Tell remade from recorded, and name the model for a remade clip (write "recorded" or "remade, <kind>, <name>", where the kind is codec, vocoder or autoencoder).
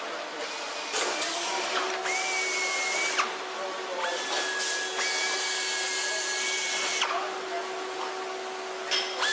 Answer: recorded